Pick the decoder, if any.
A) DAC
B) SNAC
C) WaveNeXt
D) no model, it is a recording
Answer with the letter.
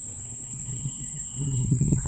B